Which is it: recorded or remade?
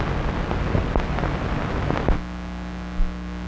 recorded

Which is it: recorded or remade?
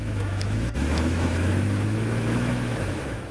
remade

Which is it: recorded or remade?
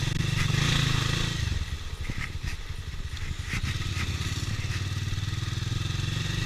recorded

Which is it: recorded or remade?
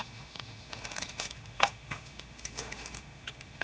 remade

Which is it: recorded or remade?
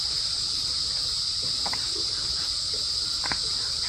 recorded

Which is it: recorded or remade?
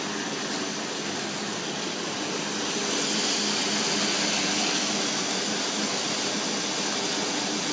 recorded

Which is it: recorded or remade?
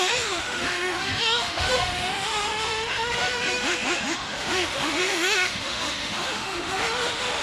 remade